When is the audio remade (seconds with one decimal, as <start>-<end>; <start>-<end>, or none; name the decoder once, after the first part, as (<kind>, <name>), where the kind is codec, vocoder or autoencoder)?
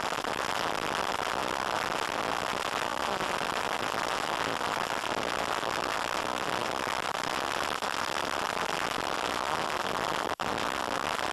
none